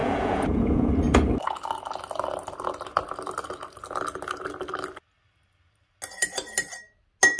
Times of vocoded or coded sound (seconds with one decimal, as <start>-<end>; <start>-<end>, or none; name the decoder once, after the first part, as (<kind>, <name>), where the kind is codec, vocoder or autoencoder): 0.0-0.9 (vocoder, Vocos)